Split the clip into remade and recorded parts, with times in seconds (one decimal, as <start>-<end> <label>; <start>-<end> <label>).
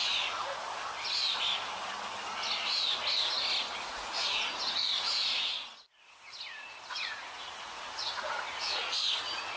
0.0-0.7 remade; 0.7-3.7 recorded; 3.7-9.6 remade